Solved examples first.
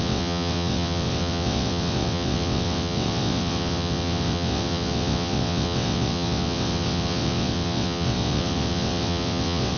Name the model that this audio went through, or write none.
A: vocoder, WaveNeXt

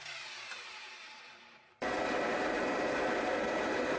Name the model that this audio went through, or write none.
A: vocoder, BigVGAN v2